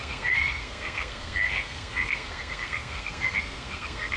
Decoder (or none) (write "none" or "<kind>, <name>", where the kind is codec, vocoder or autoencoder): codec, SNAC